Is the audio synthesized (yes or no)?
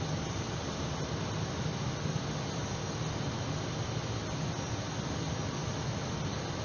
no